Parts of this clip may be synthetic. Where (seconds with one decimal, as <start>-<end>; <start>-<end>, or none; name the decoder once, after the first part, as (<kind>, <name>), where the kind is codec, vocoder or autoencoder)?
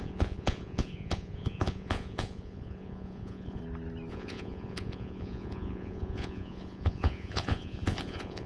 0.0-3.6 (vocoder, Vocos); 4.1-8.5